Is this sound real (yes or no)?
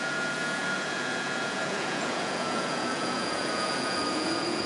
no